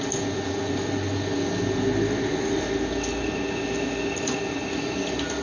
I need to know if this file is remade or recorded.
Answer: recorded